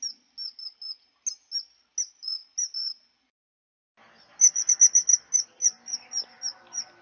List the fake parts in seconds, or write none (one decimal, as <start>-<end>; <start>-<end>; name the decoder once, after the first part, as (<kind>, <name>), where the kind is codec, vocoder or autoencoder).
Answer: none